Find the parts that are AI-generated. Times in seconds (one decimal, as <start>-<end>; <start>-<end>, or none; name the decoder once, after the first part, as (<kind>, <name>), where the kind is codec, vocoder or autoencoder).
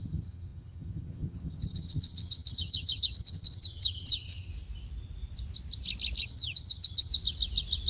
0.0-4.5 (vocoder, HiFi-GAN); 6.2-7.1